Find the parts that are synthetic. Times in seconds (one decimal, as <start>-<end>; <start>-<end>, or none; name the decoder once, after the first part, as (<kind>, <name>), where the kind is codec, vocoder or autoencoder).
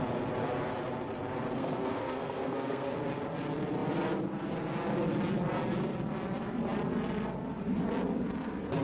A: 1.6-3.0 (codec, SNAC)